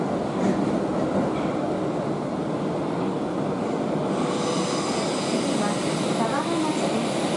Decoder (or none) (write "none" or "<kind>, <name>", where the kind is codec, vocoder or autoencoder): none